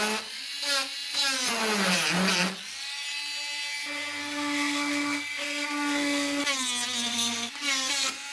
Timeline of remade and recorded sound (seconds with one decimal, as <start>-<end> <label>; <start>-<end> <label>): 0.0-4.2 recorded; 4.2-6.4 remade; 6.4-7.1 recorded; 7.1-7.9 remade; 7.9-8.3 recorded